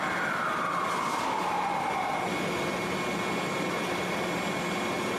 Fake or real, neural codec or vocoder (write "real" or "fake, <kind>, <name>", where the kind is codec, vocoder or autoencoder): real